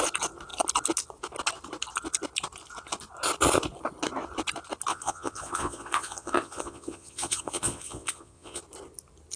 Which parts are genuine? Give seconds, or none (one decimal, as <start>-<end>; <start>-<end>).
0.0-4.9; 8.6-9.4

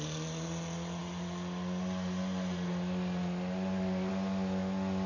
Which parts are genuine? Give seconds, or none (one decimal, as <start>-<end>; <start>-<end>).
0.0-5.1